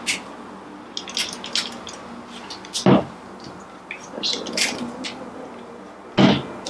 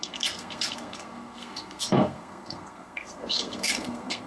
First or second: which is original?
first